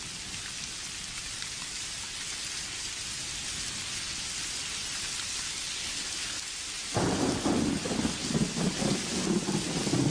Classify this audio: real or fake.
real